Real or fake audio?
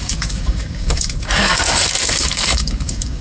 fake